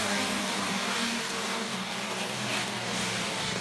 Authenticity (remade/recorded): remade